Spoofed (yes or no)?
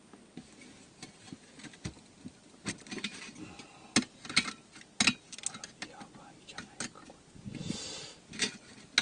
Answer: no